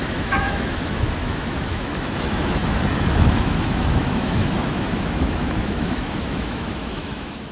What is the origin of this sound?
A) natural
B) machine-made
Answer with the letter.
B